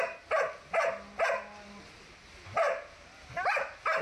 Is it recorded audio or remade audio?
recorded